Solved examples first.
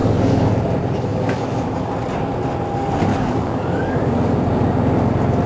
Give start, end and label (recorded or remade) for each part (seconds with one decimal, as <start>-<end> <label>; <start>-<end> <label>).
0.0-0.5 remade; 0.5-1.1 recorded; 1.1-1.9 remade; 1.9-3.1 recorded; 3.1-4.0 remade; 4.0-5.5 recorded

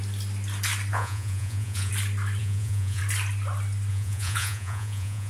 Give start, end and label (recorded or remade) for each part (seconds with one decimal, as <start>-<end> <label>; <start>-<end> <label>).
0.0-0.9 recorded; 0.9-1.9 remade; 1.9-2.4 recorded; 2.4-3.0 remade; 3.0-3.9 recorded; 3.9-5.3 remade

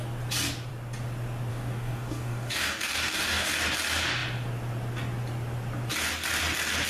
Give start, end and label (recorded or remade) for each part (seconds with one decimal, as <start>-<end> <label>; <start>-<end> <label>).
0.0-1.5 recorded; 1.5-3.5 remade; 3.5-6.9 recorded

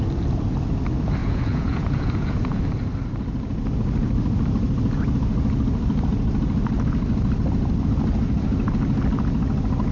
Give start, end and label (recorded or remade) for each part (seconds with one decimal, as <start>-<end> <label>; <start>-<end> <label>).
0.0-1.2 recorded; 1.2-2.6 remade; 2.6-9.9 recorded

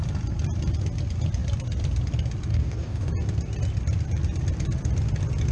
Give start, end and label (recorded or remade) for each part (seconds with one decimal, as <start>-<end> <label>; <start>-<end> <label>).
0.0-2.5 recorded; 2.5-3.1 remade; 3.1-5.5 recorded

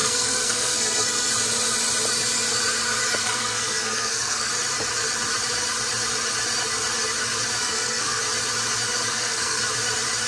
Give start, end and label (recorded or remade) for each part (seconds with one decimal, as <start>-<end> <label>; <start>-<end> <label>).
0.0-1.3 remade; 1.3-3.2 recorded; 3.2-4.5 remade; 4.5-7.6 recorded; 7.6-8.2 remade; 8.2-9.1 recorded; 9.1-9.6 remade; 9.6-10.3 recorded